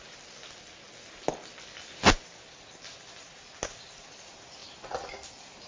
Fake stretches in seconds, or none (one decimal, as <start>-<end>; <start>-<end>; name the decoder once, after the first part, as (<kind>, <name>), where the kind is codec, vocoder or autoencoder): none